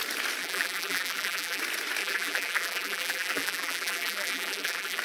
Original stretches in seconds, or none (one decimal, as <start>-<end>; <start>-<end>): 0.0-0.4; 1.6-2.0